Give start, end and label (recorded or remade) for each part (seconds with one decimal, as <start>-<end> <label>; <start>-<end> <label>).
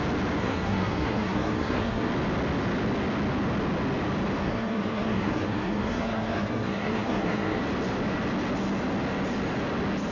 0.0-0.4 recorded; 0.4-2.1 remade; 2.1-4.4 recorded; 4.4-7.6 remade; 7.6-10.1 recorded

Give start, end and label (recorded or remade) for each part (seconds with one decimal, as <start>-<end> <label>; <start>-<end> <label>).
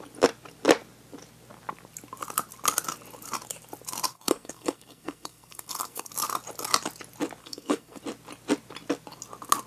0.0-4.1 recorded; 4.1-6.1 remade; 6.1-7.4 recorded; 7.4-8.0 remade; 8.0-9.7 recorded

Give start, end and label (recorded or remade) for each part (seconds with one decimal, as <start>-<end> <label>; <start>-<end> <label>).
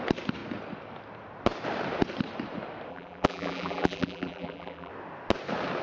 0.0-2.9 recorded; 2.9-4.9 remade; 4.9-5.8 recorded